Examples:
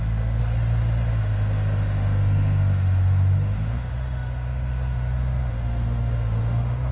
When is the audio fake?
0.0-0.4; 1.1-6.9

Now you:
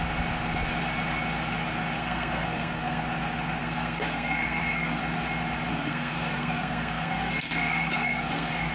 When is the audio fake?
2.0-3.0; 3.6-5.0; 5.7-8.7

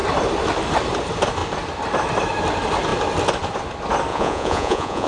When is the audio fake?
4.1-5.1

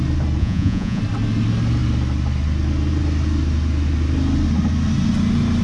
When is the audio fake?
0.4-1.0

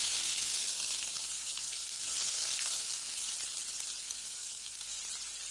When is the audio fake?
0.0-3.3; 4.0-5.0